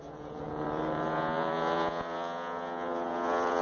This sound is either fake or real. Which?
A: fake